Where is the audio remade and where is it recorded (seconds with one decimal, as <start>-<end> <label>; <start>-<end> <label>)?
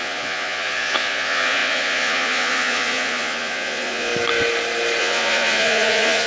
0.0-4.1 remade; 4.1-5.0 recorded; 5.0-6.3 remade